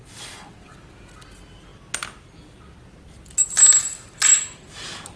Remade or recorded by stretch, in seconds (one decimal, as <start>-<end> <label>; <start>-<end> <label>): 0.0-5.2 recorded